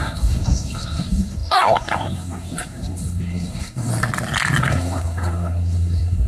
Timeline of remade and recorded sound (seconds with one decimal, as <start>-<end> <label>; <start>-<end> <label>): 0.0-3.9 remade; 3.9-4.6 recorded; 4.6-6.3 remade